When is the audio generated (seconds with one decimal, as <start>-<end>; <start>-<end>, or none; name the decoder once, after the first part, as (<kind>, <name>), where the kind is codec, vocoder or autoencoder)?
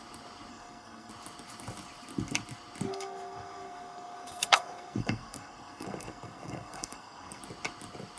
0.5-1.1 (codec, SNAC); 2.9-7.4